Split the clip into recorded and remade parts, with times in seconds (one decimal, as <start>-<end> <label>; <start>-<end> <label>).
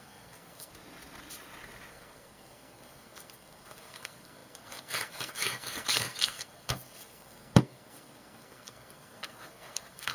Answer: 0.0-0.7 remade; 0.7-1.9 recorded; 1.9-10.1 remade